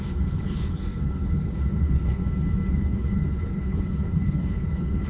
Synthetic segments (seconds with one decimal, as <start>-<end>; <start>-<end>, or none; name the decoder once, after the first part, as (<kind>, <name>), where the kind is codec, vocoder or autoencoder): 0.0-2.2 (codec, HILCodec); 2.7-5.1